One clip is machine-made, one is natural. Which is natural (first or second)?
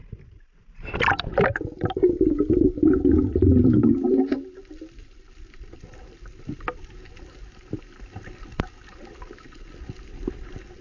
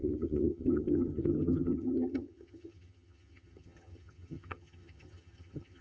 first